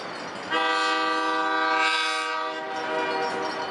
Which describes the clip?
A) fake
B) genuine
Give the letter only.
B